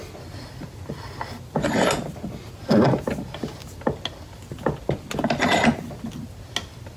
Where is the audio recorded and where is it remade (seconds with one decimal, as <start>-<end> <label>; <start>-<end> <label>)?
0.0-7.0 recorded